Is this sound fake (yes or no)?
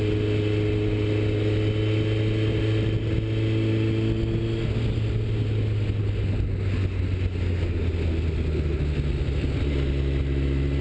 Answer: no